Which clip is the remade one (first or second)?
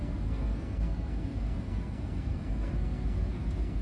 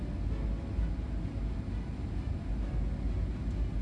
first